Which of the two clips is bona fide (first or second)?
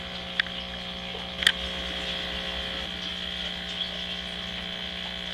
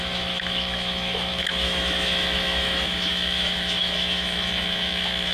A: first